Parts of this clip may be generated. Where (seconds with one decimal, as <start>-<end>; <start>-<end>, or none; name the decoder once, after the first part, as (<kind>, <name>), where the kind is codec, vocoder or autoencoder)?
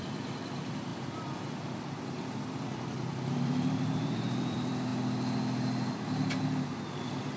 0.0-4.9 (vocoder, BigVGAN v2); 6.9-7.4